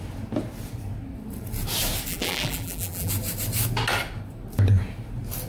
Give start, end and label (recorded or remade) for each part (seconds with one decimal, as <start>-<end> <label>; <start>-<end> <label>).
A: 0.0-2.1 recorded; 2.1-3.1 remade; 3.1-5.5 recorded